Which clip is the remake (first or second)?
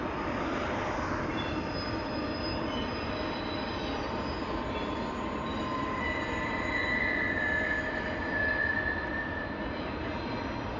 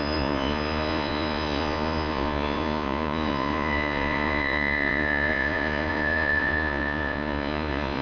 second